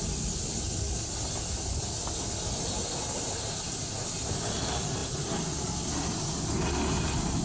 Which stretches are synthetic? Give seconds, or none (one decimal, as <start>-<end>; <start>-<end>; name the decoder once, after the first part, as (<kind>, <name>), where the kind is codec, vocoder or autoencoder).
none